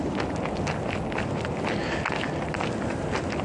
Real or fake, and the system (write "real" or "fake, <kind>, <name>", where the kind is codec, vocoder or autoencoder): real